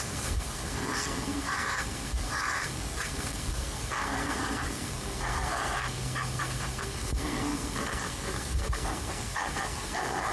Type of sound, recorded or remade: remade